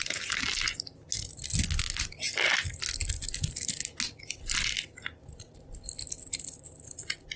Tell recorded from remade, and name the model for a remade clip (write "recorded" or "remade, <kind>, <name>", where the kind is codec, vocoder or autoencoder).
recorded